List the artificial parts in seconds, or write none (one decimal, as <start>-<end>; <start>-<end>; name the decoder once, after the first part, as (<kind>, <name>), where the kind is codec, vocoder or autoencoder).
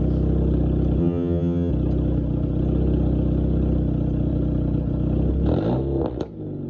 1.0-1.7 (vocoder, HiFi-GAN)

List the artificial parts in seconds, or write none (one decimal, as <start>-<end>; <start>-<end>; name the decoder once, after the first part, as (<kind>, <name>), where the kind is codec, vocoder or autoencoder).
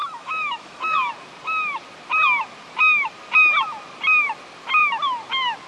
0.0-1.1 (autoencoder, DAC-VAE)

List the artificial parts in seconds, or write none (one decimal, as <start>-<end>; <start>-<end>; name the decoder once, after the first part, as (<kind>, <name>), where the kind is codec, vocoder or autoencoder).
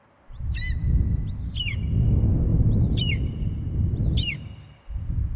2.5-3.9 (vocoder, BigVGAN v2)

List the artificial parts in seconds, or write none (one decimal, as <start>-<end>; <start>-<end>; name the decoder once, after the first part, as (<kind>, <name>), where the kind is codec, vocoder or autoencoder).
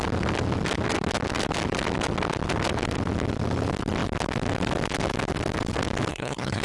6.1-6.6 (codec, SNAC)